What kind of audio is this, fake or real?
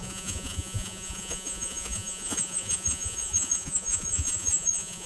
fake